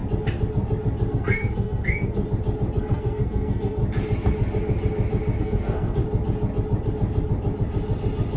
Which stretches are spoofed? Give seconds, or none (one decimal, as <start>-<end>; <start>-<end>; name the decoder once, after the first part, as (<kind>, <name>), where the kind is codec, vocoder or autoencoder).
1.1-2.2 (codec, SNAC); 2.8-3.8; 5.4-6.0